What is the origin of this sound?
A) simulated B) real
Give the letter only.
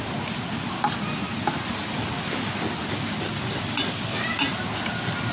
B